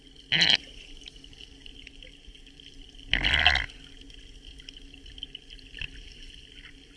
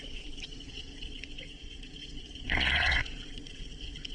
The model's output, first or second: second